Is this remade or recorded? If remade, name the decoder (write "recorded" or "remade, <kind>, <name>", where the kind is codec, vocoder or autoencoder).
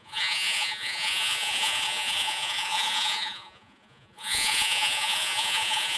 remade, vocoder, Vocos